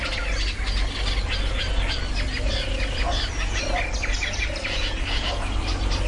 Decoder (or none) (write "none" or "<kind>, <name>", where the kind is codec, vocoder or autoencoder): none